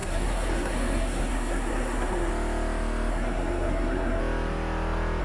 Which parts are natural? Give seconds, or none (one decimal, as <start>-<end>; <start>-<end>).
2.3-3.1; 4.2-5.2